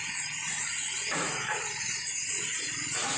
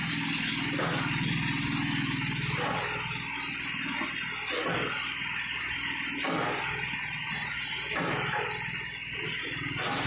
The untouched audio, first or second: second